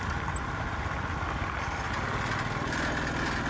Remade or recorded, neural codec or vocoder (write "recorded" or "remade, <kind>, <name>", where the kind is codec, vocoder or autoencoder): recorded